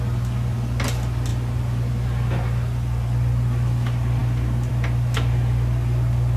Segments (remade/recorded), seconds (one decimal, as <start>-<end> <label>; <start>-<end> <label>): 0.0-6.4 recorded

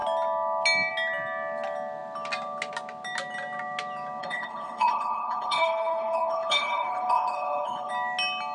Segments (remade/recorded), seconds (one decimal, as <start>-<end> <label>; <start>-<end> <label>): 0.0-4.2 recorded; 4.2-7.9 remade; 7.9-8.5 recorded